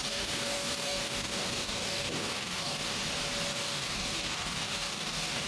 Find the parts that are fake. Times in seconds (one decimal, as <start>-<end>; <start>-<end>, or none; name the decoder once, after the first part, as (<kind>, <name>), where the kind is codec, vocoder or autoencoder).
0.0-2.8 (codec, DAC); 3.5-5.5